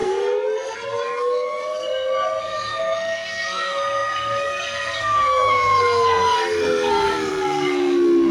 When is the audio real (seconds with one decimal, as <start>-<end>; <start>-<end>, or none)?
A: none